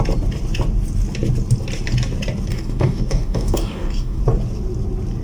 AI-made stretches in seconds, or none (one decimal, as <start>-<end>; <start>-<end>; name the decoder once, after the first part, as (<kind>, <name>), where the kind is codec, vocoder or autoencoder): 2.5-4.2 (codec, DAC)